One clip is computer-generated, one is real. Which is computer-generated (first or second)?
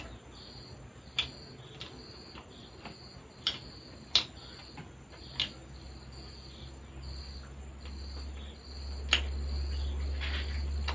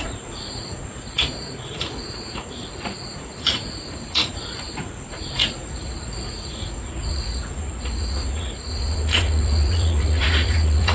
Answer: second